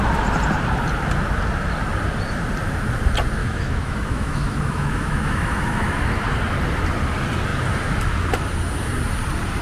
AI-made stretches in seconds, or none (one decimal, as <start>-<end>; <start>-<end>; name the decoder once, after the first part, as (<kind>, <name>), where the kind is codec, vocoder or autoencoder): 3.4-6.0 (autoencoder, DAC-VAE)